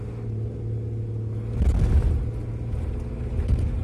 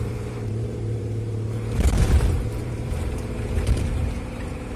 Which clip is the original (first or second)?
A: first